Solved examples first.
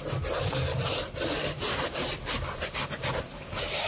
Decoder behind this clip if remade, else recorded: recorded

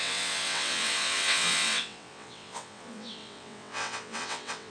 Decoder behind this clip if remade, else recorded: remade, vocoder, WaveNeXt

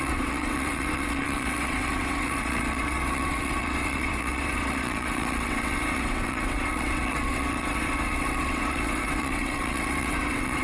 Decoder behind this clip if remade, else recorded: remade, vocoder, WaveNeXt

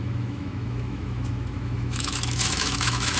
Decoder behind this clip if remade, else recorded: remade, autoencoder, DAC-VAE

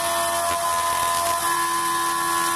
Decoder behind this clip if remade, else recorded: recorded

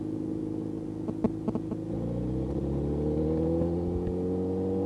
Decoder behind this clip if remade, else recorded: recorded